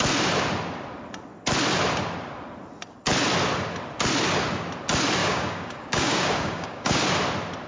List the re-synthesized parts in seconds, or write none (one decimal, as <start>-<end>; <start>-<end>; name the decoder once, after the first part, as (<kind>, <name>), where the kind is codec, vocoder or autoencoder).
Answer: 5.2-7.0 (codec, DAC)